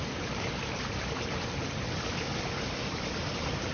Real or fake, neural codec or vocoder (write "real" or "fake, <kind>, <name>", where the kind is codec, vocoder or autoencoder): fake, vocoder, BigVGAN v2